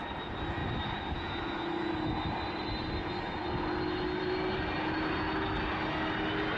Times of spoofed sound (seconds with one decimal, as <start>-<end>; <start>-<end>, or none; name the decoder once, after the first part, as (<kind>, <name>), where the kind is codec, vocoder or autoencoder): none